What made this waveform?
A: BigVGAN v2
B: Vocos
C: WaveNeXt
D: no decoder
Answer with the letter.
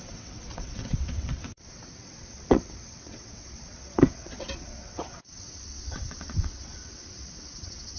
C